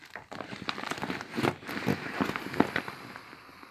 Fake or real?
real